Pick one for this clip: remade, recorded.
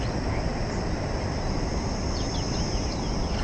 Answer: recorded